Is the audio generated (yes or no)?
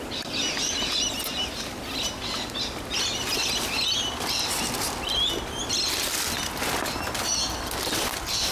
no